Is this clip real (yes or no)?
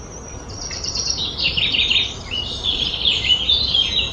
yes